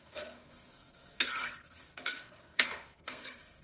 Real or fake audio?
fake